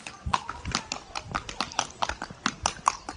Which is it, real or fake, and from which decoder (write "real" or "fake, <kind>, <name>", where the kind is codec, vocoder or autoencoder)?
real